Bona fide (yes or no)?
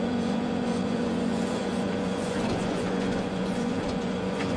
no